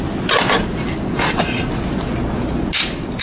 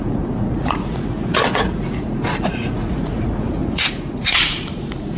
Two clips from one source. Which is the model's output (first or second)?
second